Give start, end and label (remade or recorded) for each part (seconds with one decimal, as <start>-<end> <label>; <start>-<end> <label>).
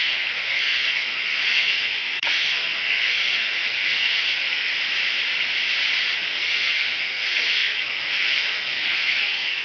0.0-4.7 remade; 4.7-6.1 recorded; 6.1-9.6 remade